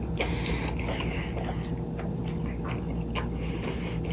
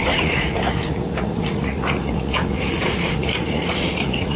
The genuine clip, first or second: first